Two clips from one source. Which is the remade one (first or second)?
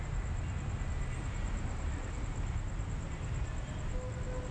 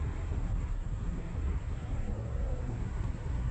second